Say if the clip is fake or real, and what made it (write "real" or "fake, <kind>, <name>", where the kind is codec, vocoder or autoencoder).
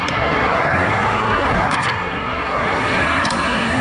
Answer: fake, codec, SNAC